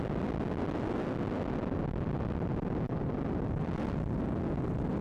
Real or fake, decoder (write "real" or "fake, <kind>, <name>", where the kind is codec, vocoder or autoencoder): real